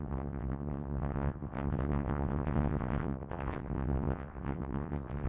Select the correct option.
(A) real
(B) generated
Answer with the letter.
B